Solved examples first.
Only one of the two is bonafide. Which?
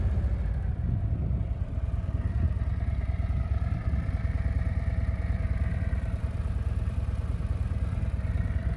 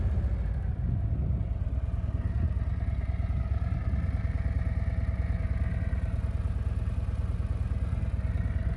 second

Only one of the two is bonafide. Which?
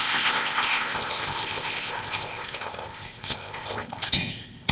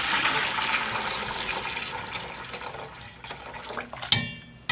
second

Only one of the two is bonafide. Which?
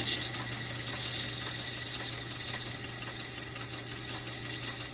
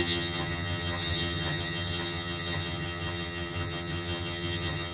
first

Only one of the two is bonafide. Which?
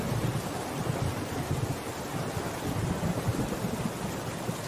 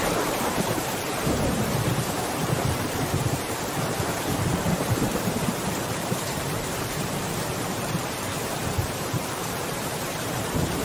first